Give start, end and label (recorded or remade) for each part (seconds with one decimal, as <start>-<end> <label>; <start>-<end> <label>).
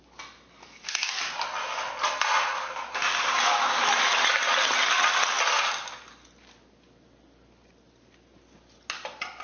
0.0-0.6 recorded; 0.6-1.2 remade; 1.2-9.4 recorded